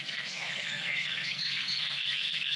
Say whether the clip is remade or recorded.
remade